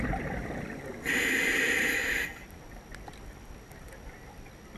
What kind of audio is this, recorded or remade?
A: recorded